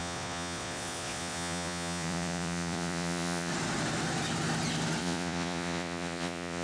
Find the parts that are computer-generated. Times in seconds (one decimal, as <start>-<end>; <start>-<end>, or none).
0.0-3.5; 5.0-6.6